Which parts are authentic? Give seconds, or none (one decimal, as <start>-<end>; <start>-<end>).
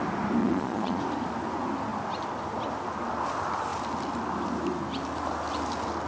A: 0.0-0.4; 1.0-6.1